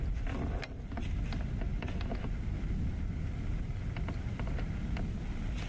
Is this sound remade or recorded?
recorded